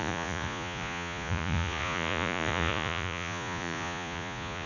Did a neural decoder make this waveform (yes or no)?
yes